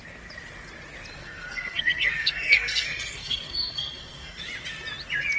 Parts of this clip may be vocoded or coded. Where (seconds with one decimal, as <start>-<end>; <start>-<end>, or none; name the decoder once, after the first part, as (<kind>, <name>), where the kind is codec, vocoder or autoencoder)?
1.2-4.4 (codec, SNAC)